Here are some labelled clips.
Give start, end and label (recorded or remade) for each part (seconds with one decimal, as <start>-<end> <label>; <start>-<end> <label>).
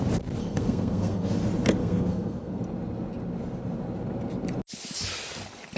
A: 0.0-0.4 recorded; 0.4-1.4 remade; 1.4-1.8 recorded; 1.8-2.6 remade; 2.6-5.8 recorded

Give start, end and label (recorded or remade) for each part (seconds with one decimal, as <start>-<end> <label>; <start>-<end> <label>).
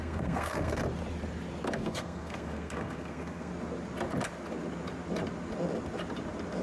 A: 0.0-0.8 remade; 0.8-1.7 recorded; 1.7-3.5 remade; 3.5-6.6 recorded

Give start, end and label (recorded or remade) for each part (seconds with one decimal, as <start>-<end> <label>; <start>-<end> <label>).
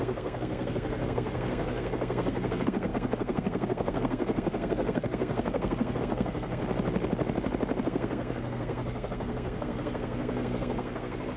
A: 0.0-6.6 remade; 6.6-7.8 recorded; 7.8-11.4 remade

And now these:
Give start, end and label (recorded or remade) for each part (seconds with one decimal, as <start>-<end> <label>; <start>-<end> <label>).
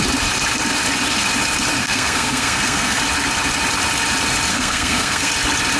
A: 0.0-1.8 recorded; 1.8-3.0 remade; 3.0-4.5 recorded; 4.5-5.3 remade; 5.3-5.8 recorded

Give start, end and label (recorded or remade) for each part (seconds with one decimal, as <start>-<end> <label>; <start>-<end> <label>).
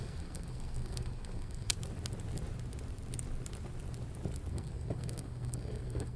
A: 0.0-1.7 remade; 1.7-4.5 recorded; 4.5-6.2 remade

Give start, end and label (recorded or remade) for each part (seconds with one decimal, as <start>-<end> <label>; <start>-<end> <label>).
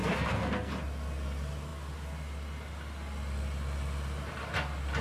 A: 0.0-0.7 remade; 0.7-5.0 recorded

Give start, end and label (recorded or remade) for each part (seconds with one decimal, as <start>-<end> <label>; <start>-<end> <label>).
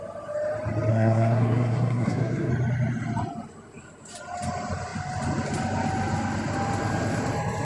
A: 0.0-0.9 recorded; 0.9-2.5 remade; 2.5-7.6 recorded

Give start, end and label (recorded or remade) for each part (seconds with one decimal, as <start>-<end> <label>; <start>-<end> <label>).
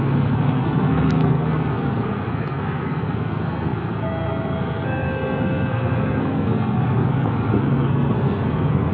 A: 0.0-8.9 remade